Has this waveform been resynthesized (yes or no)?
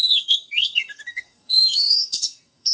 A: yes